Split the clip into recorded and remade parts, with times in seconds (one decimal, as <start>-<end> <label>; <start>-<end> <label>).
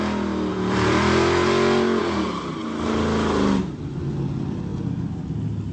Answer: 0.0-0.5 recorded; 0.5-2.0 remade; 2.0-5.7 recorded